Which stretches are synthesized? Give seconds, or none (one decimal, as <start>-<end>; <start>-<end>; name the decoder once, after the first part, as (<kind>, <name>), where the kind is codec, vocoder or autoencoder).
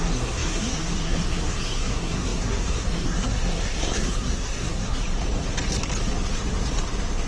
0.0-5.0 (codec, SNAC)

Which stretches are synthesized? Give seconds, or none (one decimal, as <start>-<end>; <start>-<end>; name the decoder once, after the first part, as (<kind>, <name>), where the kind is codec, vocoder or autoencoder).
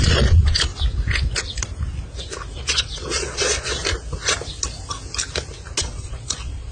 0.0-0.7 (vocoder, Vocos); 2.5-3.8; 5.8-6.7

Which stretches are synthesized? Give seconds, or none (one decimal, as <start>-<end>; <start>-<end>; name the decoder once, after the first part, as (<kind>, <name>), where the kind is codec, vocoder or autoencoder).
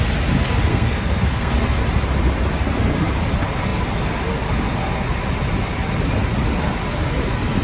0.7-1.5 (codec, SNAC)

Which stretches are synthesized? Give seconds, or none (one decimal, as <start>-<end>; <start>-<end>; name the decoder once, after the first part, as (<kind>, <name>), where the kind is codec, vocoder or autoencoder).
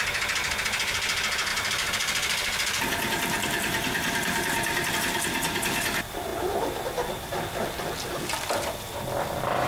1.5-4.9 (vocoder, BigVGAN v2)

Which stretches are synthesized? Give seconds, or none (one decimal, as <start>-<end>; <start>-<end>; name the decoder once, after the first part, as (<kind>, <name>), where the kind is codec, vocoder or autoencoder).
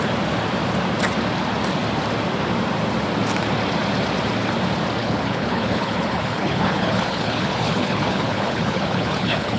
5.0-9.6 (codec, HILCodec)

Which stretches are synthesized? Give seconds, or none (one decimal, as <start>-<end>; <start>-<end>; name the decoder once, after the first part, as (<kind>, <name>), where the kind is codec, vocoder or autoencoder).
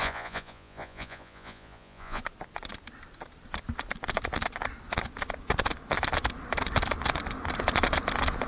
0.0-2.2 (vocoder, Vocos)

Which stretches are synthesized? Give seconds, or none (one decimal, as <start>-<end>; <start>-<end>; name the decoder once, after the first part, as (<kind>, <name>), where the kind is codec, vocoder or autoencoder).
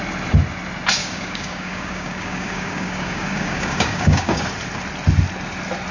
1.0-4.4 (codec, DAC)